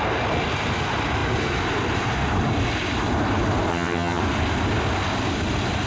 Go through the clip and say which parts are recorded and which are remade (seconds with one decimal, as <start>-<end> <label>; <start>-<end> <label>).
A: 0.0-3.7 recorded; 3.7-4.2 remade; 4.2-5.9 recorded